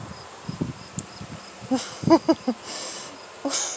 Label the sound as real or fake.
real